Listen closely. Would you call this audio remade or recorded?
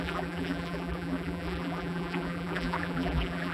remade